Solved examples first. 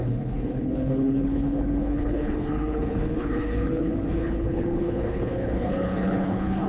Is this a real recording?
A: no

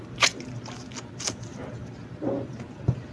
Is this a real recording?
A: yes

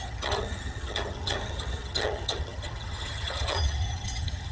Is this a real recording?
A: no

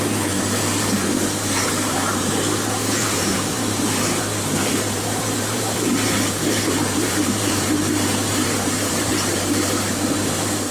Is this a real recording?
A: no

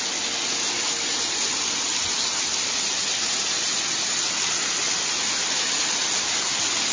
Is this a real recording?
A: yes